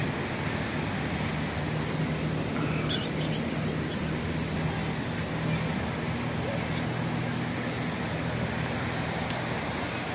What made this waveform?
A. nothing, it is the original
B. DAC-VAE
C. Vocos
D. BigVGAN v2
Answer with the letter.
A